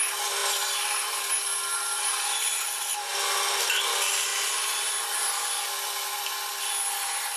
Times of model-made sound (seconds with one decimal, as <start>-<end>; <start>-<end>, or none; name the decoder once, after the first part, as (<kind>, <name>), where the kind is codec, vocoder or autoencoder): none